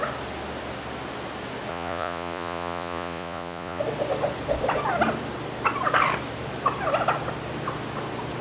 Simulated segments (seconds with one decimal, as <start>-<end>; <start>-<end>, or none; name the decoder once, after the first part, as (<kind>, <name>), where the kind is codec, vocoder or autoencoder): 1.7-3.8 (vocoder, Vocos)